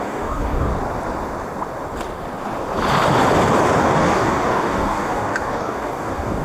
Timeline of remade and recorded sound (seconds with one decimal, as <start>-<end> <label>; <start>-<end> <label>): 0.0-0.7 remade; 0.7-3.8 recorded; 3.8-6.4 remade

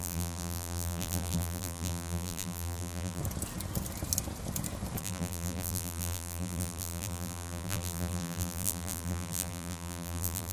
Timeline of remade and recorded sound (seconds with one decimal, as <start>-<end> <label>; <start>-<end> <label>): 0.0-3.2 remade; 3.2-5.0 recorded; 5.0-10.5 remade